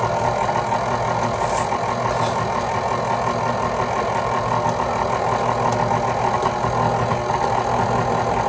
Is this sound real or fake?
real